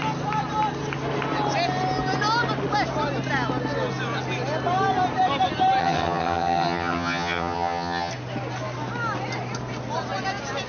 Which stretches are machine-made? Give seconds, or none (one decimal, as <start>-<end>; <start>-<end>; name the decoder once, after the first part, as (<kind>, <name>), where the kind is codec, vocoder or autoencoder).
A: 5.8-8.1 (vocoder, HiFi-GAN)